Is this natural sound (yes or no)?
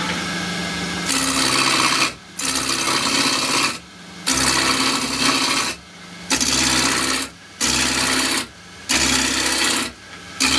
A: yes